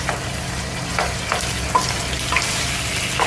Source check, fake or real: real